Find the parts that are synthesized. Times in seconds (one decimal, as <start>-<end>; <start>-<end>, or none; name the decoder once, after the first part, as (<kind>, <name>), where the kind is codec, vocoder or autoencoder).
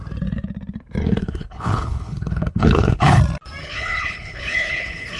1.0-3.2 (codec, HILCodec); 3.6-5.2